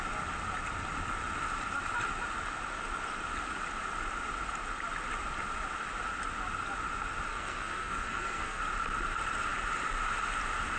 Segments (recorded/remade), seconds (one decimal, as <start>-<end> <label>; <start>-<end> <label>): 0.0-7.3 recorded; 7.3-8.6 remade; 8.6-10.8 recorded